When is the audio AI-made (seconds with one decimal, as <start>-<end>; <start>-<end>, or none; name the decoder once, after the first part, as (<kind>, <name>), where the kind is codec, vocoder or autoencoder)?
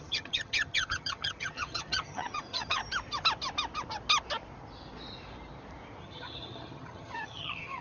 0.0-2.8 (vocoder, HiFi-GAN); 6.0-7.8